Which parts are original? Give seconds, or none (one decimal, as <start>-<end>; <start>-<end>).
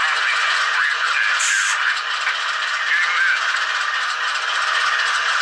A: 0.0-0.4; 1.1-5.4